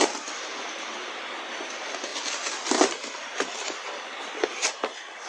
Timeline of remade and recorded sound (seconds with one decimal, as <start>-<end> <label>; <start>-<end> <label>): 0.0-5.3 recorded